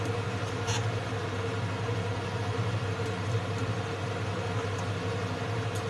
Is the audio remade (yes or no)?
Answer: no